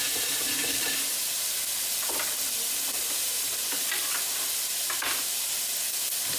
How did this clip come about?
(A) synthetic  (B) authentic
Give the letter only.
B